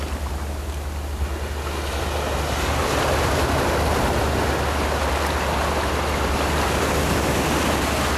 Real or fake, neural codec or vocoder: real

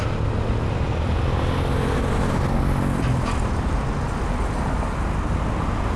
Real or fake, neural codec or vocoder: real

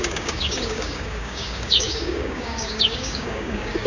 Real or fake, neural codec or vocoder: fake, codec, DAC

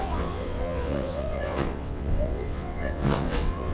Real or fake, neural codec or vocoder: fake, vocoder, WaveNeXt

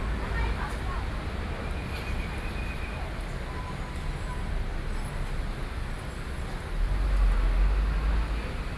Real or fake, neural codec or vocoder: real